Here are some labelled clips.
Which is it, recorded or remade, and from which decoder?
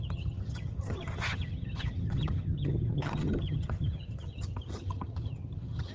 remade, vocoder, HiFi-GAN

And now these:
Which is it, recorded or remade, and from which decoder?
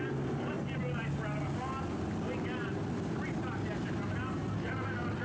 recorded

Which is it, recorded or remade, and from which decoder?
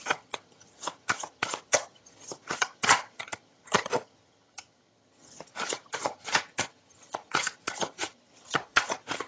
remade, vocoder, HiFi-GAN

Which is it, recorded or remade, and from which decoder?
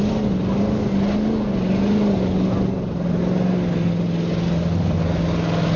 recorded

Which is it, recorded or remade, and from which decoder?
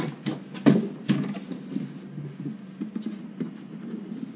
recorded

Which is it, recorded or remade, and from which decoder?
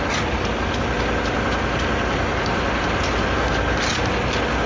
recorded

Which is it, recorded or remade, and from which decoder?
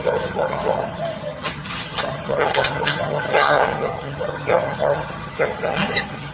remade, vocoder, HiFi-GAN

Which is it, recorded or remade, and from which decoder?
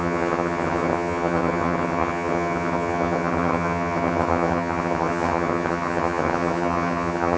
remade, vocoder, HiFi-GAN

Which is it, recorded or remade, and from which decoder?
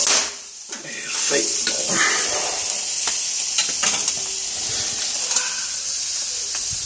recorded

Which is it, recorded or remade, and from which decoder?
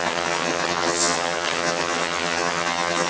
remade, vocoder, HiFi-GAN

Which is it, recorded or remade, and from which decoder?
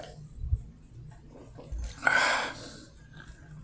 recorded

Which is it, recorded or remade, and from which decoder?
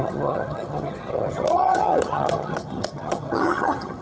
remade, vocoder, HiFi-GAN